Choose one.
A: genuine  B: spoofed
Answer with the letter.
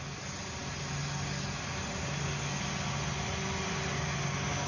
A